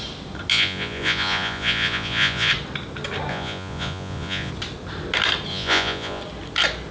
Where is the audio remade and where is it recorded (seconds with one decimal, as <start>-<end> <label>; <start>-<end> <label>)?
0.0-0.5 recorded; 0.5-2.5 remade; 2.5-3.3 recorded; 3.3-4.5 remade; 4.5-5.5 recorded; 5.5-6.2 remade; 6.2-6.9 recorded